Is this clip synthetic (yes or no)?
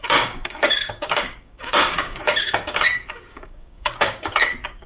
yes